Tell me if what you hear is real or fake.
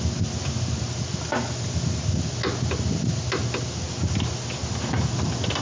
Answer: real